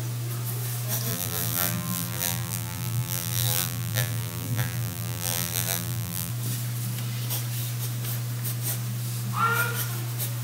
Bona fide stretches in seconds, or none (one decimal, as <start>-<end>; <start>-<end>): 0.0-1.1; 6.3-10.4